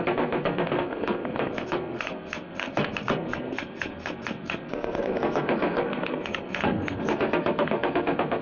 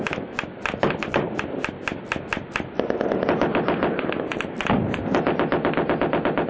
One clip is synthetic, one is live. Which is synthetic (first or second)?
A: first